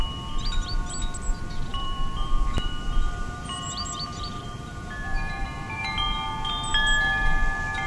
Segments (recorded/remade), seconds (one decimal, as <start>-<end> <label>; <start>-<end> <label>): 0.0-1.7 recorded; 1.7-5.8 remade; 5.8-7.9 recorded